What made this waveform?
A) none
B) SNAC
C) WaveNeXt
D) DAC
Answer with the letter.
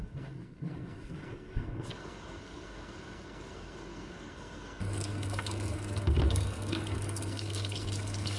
B